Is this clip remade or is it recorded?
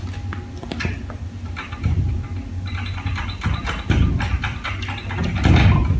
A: recorded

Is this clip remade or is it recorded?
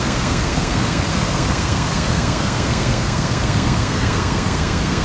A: remade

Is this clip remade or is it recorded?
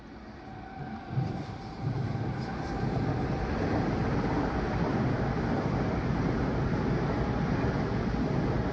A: recorded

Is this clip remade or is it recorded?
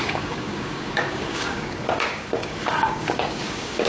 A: remade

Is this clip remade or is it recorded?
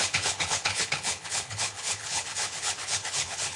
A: remade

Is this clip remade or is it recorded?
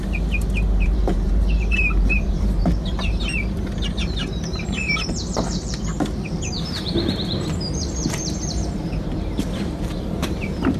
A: remade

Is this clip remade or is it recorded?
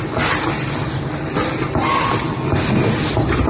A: recorded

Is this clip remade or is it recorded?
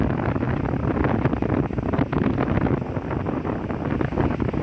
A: recorded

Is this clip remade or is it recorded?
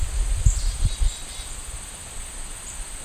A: recorded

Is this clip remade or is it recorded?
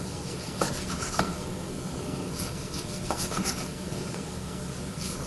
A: remade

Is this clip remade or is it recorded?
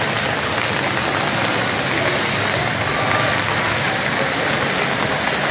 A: recorded